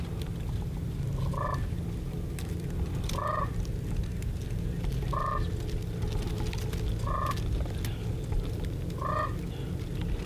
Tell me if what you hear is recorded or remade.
recorded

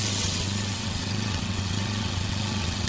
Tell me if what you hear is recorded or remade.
remade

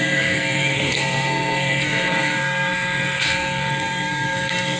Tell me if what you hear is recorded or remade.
remade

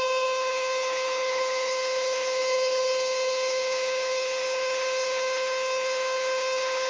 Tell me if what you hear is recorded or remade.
remade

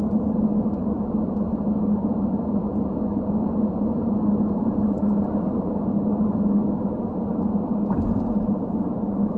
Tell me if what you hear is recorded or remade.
remade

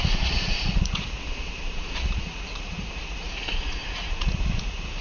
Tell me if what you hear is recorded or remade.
remade